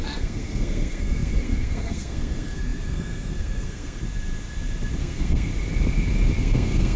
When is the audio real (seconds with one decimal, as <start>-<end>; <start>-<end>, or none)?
4.0-5.0; 5.5-6.4